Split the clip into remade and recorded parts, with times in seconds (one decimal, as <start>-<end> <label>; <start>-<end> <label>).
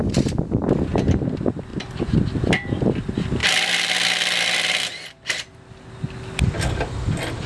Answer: 0.0-1.7 recorded; 1.7-2.8 remade; 2.8-7.5 recorded